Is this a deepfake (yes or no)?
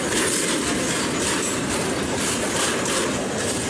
no